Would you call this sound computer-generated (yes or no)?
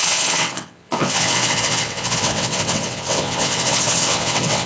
yes